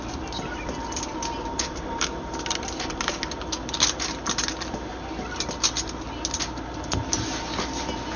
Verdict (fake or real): real